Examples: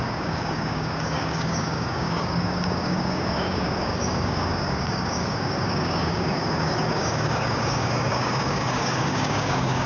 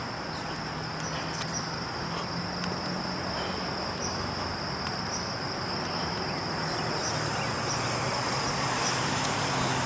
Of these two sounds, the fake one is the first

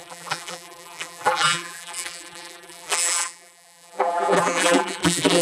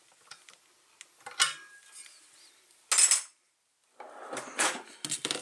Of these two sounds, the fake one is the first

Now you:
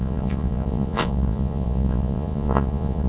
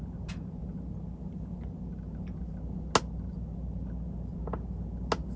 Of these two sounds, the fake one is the first